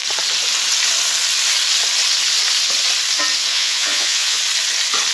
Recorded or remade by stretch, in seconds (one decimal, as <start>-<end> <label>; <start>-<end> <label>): 0.0-3.5 recorded; 3.5-4.4 remade; 4.4-5.1 recorded